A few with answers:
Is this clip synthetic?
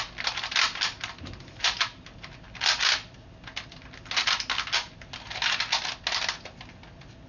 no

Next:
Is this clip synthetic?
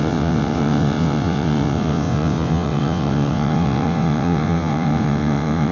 yes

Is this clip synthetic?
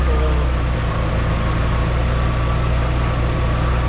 no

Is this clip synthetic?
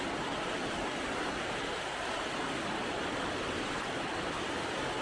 no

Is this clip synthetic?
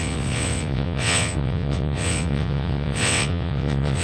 yes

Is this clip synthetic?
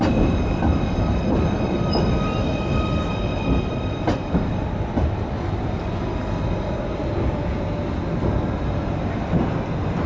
no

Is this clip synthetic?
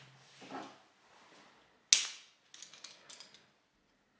no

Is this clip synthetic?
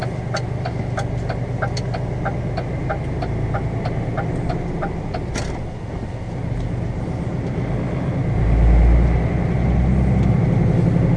no